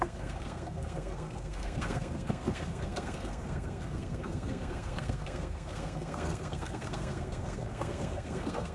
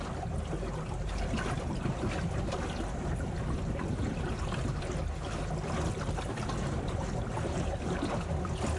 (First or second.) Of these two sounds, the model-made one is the first